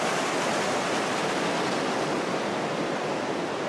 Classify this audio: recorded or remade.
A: recorded